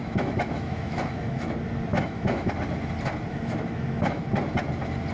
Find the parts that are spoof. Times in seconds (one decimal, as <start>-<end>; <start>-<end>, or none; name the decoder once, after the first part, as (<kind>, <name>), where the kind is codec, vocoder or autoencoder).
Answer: 0.0-1.5 (autoencoder, DAC-VAE); 1.9-2.5; 3.3-4.2